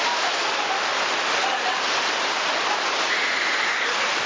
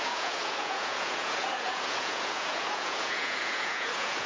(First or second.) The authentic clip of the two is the first